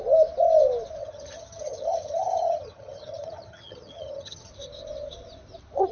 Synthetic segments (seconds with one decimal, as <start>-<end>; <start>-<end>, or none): 1.0-4.5